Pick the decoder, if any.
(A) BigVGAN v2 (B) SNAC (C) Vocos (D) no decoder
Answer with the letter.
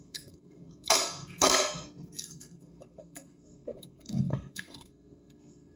B